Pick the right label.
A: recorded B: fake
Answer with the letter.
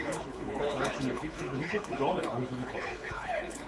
B